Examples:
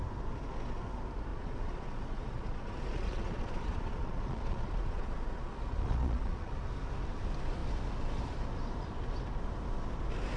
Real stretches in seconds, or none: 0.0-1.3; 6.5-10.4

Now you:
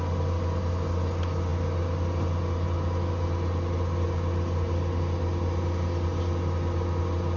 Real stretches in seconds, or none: 0.0-7.4

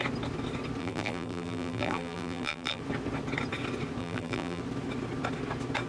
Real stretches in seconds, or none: 0.0-0.8; 2.8-4.0; 4.6-5.9

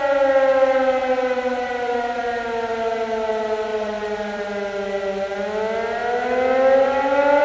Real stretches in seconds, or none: 0.0-1.0; 2.2-3.7; 4.4-7.4

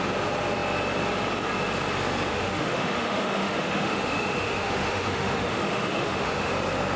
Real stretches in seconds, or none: 0.0-2.3; 6.5-7.0

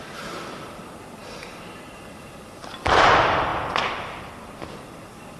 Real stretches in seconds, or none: none